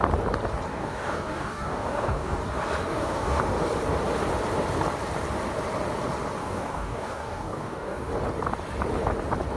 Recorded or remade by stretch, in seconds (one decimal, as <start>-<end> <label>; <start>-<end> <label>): 0.0-0.7 recorded; 0.7-2.4 remade; 2.4-2.9 recorded; 2.9-3.4 remade; 3.4-6.4 recorded; 6.4-8.1 remade; 8.1-9.6 recorded